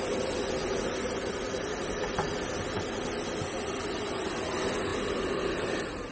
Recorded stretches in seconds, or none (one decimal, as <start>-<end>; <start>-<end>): 0.0-6.1